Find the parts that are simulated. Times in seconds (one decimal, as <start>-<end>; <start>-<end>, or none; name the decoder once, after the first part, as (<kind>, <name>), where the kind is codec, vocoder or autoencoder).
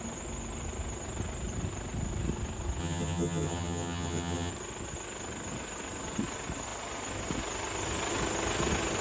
2.8-4.5 (vocoder, HiFi-GAN)